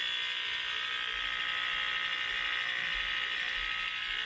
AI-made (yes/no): no